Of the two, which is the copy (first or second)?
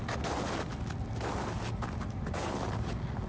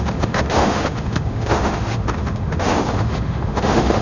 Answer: second